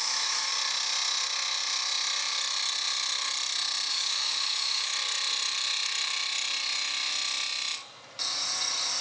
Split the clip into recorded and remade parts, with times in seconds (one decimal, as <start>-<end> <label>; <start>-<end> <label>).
0.0-0.5 remade; 0.5-3.9 recorded; 3.9-4.9 remade; 4.9-9.0 recorded